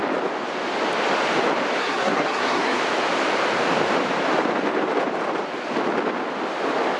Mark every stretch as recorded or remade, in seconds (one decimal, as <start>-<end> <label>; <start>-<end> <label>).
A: 0.0-1.8 recorded; 1.8-2.8 remade; 2.8-7.0 recorded